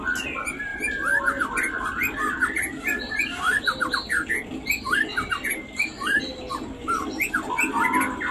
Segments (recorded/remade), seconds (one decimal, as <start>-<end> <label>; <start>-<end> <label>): 0.0-8.3 recorded